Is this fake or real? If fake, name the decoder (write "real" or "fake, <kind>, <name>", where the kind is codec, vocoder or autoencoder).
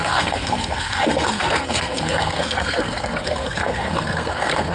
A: fake, codec, SNAC